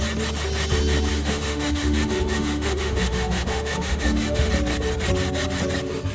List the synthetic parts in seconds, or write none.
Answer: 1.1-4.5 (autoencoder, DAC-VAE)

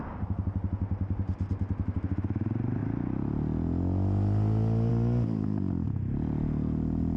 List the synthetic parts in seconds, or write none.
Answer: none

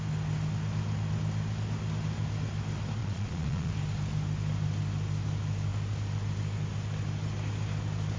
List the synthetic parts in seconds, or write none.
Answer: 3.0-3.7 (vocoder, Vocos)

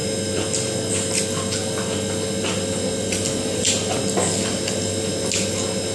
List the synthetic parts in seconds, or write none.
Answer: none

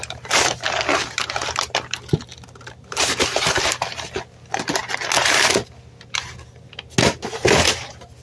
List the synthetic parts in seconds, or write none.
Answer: none

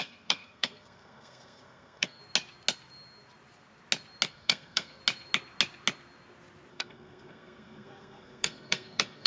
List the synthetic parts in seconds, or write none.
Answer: 0.0-2.2 (codec, SNAC); 4.3-5.0; 6.7-9.3

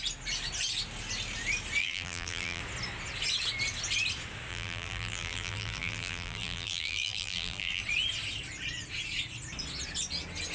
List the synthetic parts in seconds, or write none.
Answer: 1.8-2.6 (vocoder, BigVGAN v2); 4.5-7.8

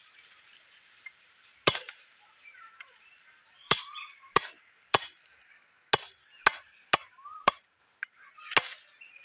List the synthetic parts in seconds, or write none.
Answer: 0.0-5.2 (vocoder, BigVGAN v2); 7.3-8.3